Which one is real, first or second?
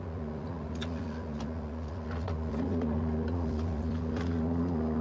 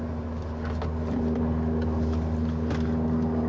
second